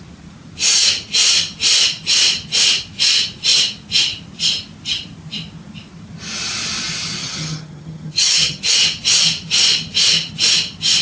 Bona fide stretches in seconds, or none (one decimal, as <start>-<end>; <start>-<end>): 0.0-7.2; 8.7-11.0